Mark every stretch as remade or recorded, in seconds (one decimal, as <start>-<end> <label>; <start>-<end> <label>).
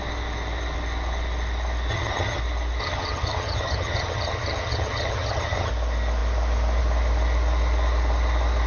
0.0-1.9 recorded; 1.9-2.4 remade; 2.4-2.8 recorded; 2.8-5.7 remade; 5.7-8.7 recorded